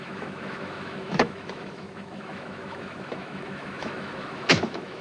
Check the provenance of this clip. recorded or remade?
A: remade